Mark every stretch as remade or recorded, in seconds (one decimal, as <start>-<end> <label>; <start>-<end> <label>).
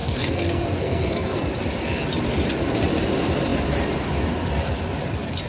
0.0-1.4 remade; 1.4-5.5 recorded